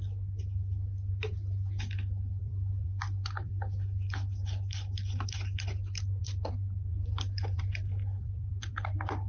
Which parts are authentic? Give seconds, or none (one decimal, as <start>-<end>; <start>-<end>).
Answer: 0.0-2.4; 3.5-6.2